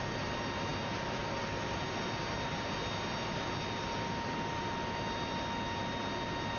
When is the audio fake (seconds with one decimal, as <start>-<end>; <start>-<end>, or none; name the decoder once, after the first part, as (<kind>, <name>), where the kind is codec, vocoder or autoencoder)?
none